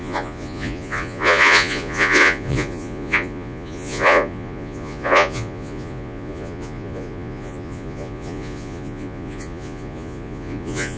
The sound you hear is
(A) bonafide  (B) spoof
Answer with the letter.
B